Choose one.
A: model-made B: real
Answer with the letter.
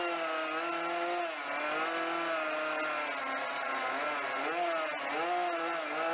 B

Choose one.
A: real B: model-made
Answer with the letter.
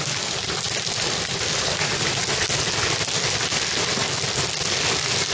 A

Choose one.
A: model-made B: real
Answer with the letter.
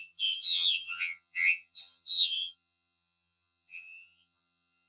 A